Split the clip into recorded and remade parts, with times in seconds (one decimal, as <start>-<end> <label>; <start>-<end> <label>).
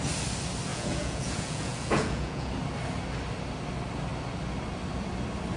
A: 0.0-0.7 recorded; 0.7-2.5 remade; 2.5-5.6 recorded